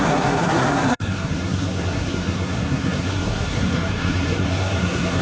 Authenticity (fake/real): fake